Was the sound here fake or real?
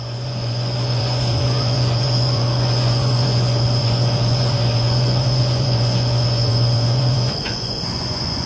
fake